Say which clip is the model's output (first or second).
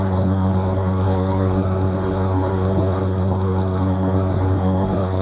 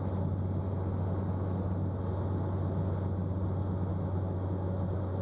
first